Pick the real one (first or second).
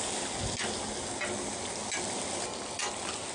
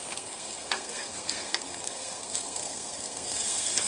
first